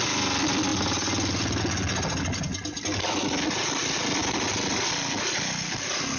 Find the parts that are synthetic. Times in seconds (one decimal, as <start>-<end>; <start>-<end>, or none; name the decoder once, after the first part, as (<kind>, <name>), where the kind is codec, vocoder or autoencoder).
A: none